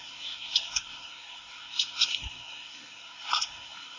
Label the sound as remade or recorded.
remade